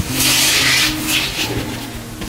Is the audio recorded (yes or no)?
yes